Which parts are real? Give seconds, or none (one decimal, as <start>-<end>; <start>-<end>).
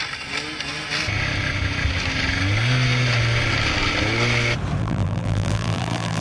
0.0-4.8